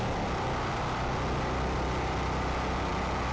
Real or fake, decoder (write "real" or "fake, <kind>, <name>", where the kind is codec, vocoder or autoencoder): real